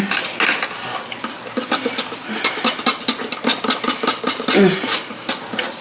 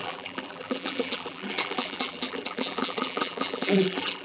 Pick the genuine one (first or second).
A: first